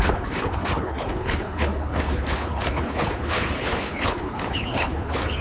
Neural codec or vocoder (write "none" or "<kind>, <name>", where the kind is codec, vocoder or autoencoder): codec, HILCodec